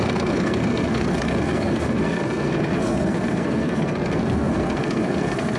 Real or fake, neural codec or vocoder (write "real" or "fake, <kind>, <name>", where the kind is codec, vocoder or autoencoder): fake, codec, SNAC